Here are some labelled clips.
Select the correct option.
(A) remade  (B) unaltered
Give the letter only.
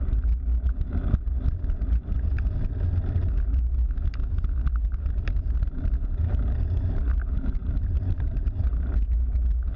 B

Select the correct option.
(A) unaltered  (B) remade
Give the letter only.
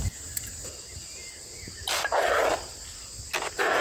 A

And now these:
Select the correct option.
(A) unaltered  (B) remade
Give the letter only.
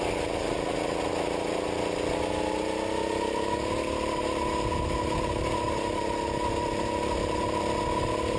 A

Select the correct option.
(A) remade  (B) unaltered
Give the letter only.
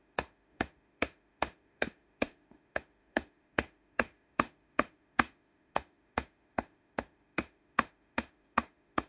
A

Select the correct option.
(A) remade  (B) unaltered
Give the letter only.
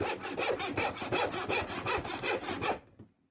B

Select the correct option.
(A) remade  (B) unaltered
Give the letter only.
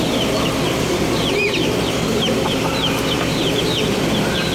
B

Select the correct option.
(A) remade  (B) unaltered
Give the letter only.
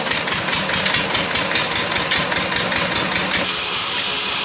B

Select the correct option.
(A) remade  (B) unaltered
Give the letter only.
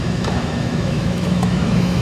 A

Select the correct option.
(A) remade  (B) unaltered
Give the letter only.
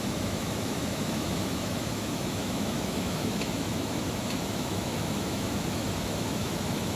A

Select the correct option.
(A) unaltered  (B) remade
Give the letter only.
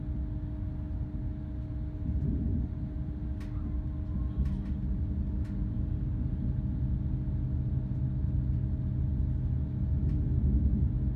A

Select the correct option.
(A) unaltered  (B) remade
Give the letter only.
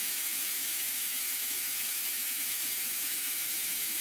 B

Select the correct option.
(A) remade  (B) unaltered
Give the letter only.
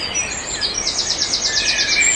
B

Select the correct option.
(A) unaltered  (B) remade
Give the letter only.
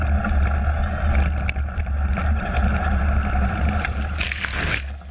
A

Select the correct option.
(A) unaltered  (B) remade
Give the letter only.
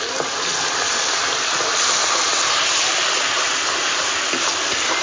A